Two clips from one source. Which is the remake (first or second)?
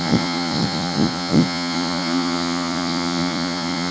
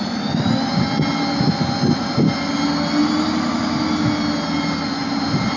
first